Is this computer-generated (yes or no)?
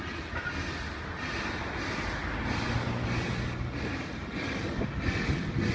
no